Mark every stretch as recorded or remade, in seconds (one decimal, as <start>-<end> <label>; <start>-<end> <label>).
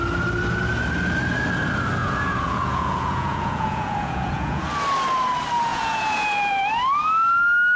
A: 0.0-2.0 recorded; 2.0-4.7 remade; 4.7-5.7 recorded; 5.7-6.6 remade; 6.6-7.8 recorded